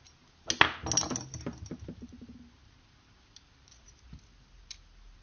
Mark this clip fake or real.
real